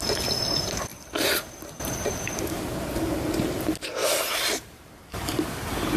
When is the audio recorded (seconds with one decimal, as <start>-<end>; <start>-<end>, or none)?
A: 0.0-0.9; 2.6-4.0